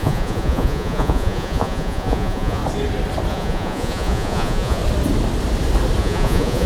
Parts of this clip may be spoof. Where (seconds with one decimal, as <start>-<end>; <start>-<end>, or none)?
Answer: 0.0-2.6; 3.3-4.8; 6.0-6.7